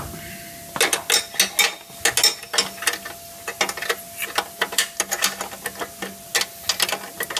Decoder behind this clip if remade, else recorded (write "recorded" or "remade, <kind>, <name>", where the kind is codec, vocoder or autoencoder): recorded